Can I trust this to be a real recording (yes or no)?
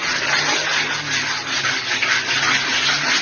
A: yes